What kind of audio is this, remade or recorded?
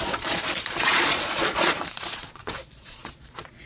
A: remade